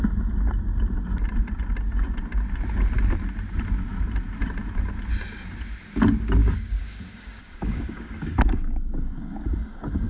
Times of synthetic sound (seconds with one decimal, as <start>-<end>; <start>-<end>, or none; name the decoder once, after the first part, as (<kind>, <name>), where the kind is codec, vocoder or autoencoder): 6.4-10.1 (codec, DAC)